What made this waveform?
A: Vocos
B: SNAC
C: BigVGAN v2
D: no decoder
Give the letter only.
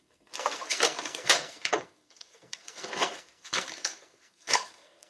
B